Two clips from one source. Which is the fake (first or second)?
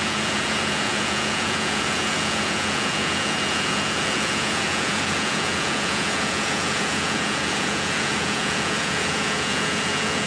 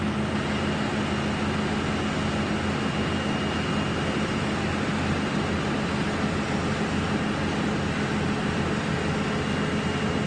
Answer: first